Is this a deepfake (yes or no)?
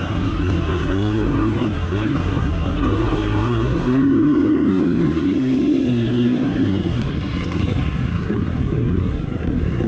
yes